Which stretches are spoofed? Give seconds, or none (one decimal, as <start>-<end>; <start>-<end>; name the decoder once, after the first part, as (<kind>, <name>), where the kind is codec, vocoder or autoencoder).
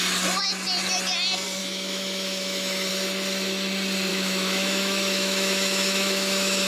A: 1.6-2.9 (autoencoder, DAC-VAE); 4.1-6.7